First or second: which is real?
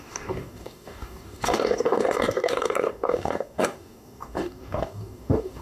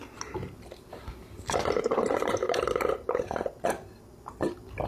second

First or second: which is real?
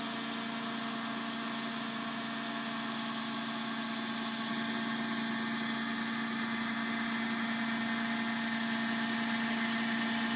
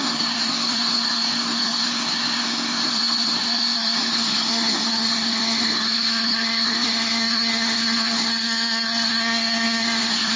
first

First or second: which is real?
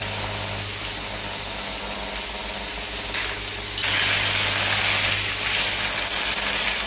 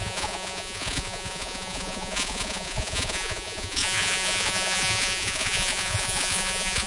first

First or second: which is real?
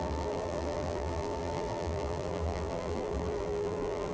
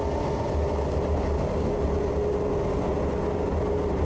second